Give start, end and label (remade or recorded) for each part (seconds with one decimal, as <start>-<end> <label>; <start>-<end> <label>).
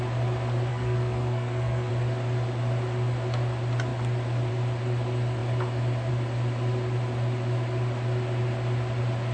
0.0-0.7 recorded; 0.7-1.9 remade; 1.9-9.3 recorded